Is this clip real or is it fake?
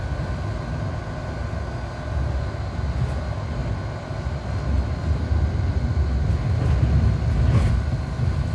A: real